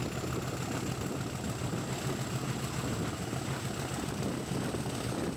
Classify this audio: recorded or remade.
recorded